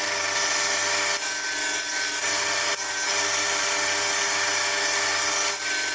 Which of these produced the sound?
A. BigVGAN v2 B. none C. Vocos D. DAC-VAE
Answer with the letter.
B